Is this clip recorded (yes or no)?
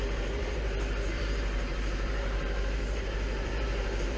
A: no